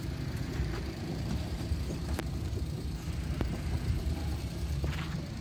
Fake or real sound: fake